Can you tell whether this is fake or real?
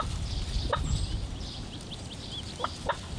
real